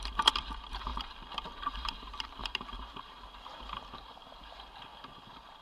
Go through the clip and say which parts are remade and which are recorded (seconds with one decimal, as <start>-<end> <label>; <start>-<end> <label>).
0.0-0.9 remade; 0.9-1.7 recorded; 1.7-4.9 remade; 4.9-5.6 recorded